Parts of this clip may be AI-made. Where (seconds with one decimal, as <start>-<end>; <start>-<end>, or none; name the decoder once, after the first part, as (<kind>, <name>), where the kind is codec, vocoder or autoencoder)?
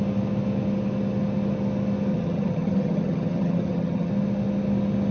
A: 2.1-4.1 (vocoder, HiFi-GAN)